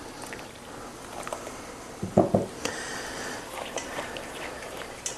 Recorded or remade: recorded